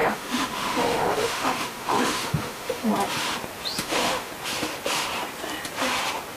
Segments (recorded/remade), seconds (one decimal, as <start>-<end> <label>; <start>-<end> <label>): 0.0-2.9 remade; 2.9-3.8 recorded; 3.8-4.3 remade; 4.3-6.4 recorded